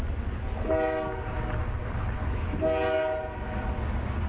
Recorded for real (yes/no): yes